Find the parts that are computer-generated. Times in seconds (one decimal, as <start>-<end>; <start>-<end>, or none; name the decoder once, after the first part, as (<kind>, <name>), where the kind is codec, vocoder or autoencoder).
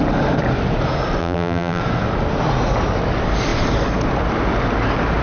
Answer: 1.2-1.8 (vocoder, BigVGAN v2)